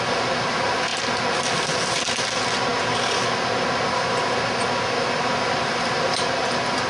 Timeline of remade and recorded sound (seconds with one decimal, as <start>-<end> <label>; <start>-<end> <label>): 0.0-6.9 recorded